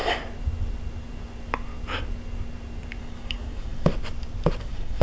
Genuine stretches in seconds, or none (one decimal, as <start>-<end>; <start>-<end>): 0.0-3.0; 3.9-4.6